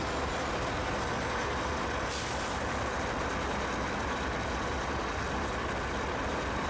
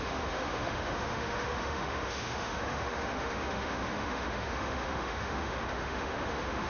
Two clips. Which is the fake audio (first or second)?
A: second